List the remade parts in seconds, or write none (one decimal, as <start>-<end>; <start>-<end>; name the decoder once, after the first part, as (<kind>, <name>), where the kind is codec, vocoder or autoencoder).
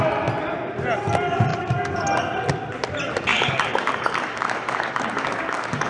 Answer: 3.3-5.9 (codec, DAC)